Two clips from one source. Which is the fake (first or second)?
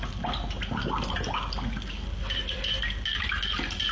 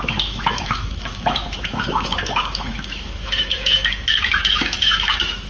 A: second